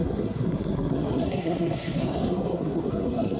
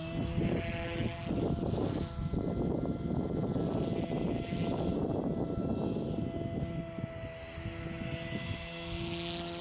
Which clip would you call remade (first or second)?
first